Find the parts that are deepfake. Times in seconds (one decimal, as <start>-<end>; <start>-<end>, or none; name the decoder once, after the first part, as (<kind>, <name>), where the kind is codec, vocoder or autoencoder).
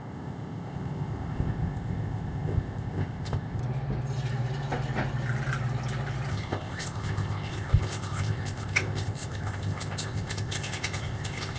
0.0-3.6 (codec, ZipCodec); 6.3-11.6